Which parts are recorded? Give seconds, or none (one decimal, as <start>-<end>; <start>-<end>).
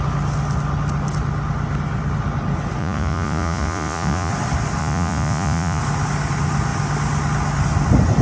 0.0-2.8; 4.3-4.8; 5.8-8.2